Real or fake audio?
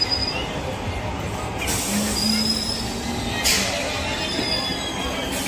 real